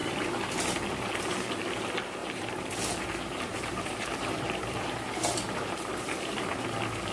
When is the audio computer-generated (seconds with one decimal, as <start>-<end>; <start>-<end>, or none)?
0.0-1.2; 2.2-6.5